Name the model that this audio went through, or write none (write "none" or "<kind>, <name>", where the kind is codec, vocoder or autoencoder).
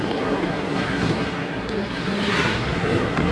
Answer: codec, SNAC